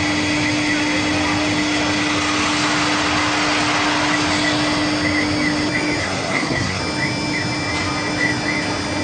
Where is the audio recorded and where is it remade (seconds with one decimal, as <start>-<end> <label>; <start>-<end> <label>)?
0.0-6.0 recorded; 6.0-6.8 remade; 6.8-9.0 recorded